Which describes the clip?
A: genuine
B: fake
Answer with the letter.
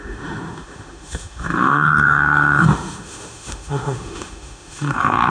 B